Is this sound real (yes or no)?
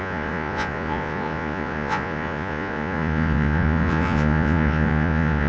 no